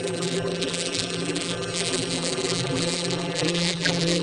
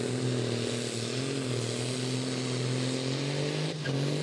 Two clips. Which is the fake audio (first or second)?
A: first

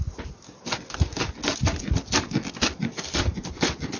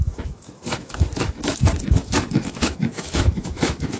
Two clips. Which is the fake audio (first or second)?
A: second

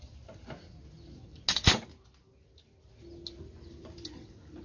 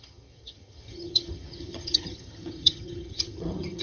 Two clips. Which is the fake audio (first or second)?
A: second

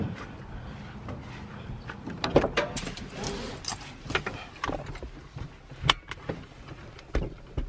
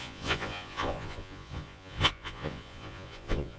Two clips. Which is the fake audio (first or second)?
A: second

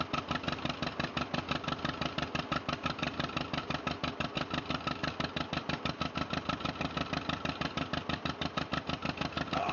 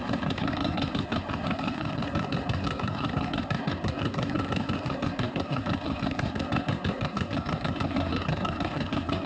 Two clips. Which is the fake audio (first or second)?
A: second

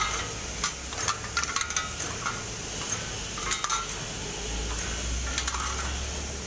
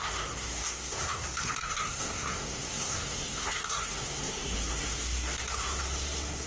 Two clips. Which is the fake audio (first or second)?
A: second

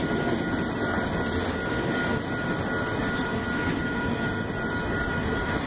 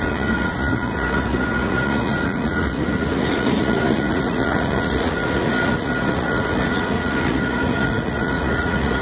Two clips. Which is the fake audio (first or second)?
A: second